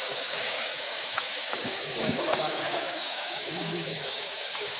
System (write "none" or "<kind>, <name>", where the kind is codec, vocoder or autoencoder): codec, DAC